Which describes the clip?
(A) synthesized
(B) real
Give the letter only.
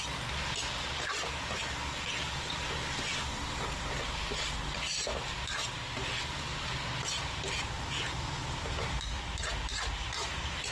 B